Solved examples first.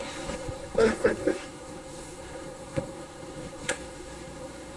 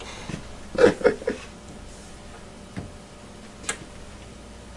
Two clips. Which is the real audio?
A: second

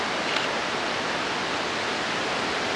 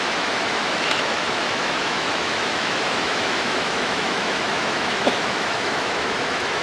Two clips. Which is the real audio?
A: first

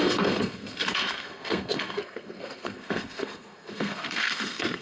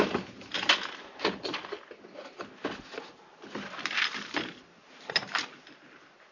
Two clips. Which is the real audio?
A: second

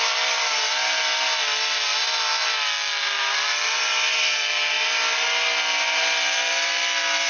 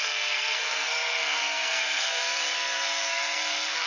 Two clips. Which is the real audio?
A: first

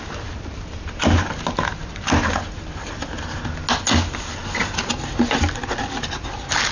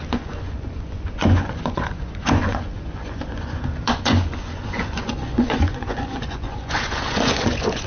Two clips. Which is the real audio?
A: first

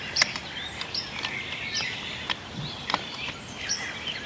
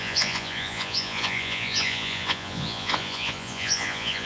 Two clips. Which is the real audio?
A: first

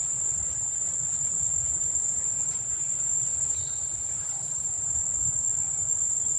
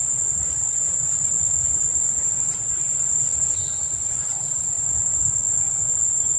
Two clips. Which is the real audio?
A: second